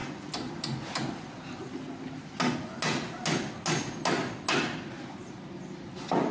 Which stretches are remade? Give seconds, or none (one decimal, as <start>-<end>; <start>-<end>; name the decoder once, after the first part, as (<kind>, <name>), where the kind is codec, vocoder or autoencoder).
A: none